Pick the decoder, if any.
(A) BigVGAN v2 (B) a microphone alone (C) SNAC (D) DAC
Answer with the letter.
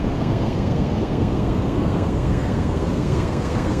C